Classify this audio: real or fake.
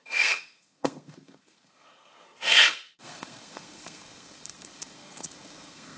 fake